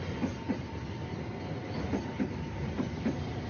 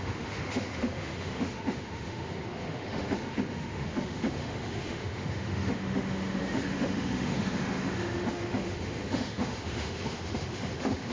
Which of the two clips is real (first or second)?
first